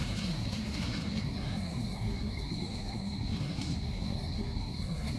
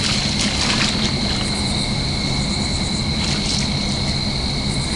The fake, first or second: first